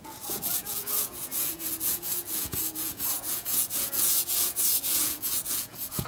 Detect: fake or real fake